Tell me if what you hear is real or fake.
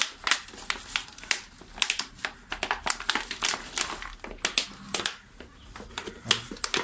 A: real